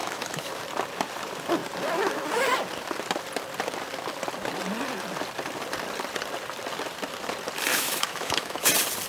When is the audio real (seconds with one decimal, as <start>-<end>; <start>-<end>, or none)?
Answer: 0.5-7.7; 8.7-9.1